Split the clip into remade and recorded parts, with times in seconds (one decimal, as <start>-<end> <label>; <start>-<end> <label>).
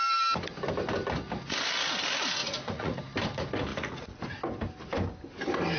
0.0-2.4 recorded; 2.4-3.0 remade; 3.0-3.7 recorded; 3.7-4.2 remade; 4.2-5.8 recorded